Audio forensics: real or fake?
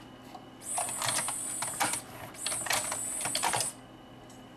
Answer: real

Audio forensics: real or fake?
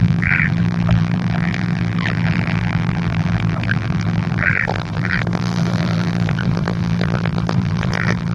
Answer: fake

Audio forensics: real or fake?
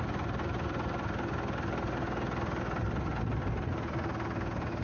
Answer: real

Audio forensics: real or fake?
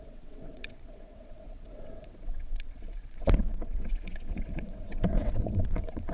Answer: fake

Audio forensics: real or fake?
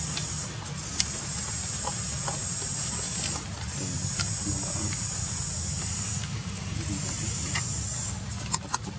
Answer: real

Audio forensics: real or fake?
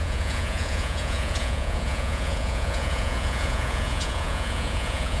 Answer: fake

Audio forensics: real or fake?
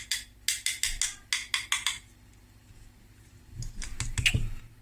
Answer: real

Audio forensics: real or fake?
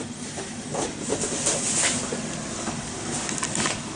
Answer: real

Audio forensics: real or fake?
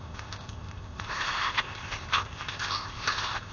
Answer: fake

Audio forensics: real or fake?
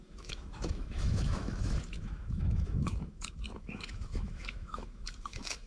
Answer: fake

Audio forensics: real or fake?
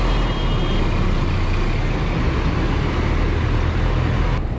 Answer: real